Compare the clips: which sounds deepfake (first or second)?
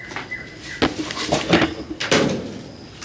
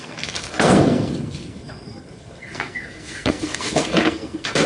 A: second